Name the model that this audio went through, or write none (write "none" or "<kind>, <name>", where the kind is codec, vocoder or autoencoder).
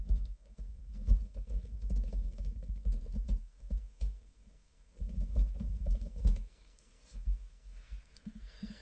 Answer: codec, SNAC